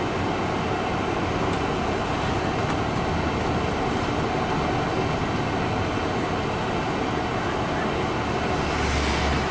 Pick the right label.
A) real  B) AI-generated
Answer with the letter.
A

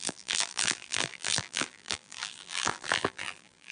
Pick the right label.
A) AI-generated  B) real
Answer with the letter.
A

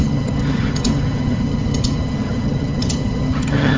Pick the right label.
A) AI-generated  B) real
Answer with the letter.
A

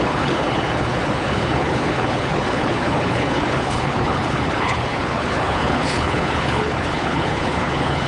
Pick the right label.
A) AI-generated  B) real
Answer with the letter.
A